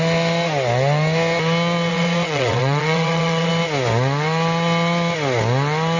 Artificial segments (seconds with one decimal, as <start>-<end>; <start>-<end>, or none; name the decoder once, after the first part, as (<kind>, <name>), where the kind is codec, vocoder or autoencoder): 1.9-3.5 (vocoder, WaveNeXt)